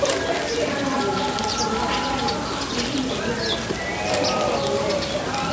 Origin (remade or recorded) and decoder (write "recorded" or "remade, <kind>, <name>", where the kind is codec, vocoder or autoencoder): recorded